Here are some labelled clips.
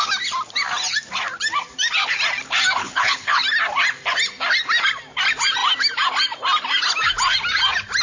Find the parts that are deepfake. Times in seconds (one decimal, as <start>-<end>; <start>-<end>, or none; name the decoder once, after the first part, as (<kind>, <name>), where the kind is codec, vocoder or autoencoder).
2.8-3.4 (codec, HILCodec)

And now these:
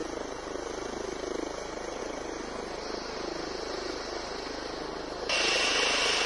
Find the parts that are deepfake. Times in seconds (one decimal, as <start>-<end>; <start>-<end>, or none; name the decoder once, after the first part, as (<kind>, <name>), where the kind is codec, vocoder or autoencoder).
none

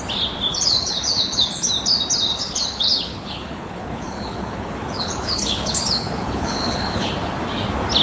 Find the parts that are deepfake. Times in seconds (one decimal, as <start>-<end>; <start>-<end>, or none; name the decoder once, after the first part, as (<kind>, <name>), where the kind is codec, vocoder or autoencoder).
0.5-1.7 (codec, HILCodec); 2.3-7.1